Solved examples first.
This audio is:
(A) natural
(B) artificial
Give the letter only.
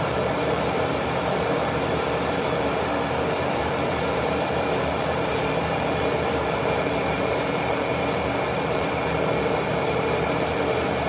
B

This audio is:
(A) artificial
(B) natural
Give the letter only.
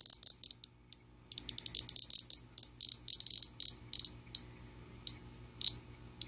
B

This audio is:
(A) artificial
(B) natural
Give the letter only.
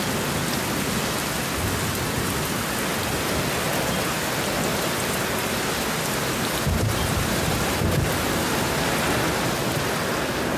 B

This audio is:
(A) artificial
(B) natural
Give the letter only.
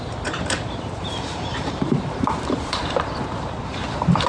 A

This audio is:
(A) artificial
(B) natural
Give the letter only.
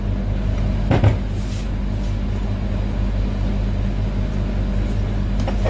B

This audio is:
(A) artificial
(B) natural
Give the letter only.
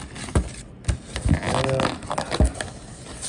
B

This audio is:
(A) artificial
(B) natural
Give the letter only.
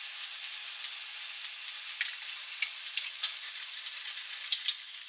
B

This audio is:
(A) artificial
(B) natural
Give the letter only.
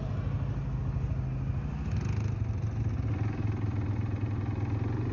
B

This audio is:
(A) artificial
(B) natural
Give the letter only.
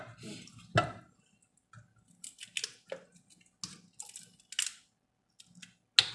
B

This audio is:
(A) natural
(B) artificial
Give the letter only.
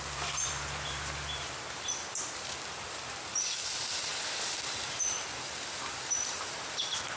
B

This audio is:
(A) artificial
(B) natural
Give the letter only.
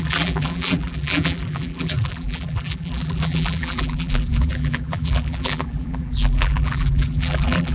A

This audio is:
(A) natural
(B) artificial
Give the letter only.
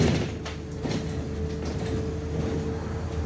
A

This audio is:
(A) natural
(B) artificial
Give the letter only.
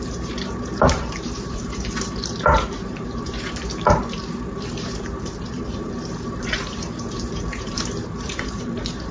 B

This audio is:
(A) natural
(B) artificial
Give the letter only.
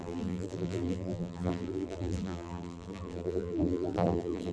B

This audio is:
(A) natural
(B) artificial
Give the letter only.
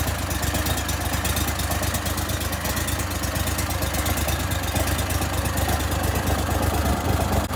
A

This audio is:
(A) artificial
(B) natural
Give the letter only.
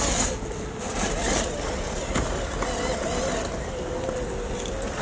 B